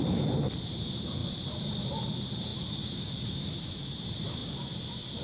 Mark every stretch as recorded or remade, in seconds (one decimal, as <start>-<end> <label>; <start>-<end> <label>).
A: 0.0-1.2 remade; 1.2-2.1 recorded; 2.1-5.2 remade